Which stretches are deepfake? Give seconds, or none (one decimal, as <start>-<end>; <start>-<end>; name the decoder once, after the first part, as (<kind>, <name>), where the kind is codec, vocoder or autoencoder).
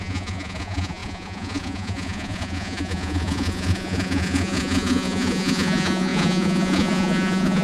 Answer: 0.0-7.6 (vocoder, Vocos)